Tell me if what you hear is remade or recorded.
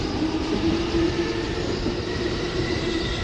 remade